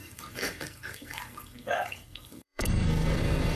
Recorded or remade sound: remade